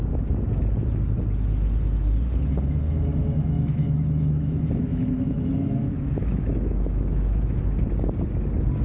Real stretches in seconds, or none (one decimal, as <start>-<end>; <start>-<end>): 0.0-3.1; 7.6-8.8